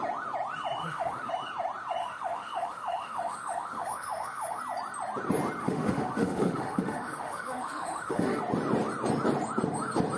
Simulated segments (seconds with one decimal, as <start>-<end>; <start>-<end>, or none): 0.8-1.3; 2.0-4.6; 5.6-8.4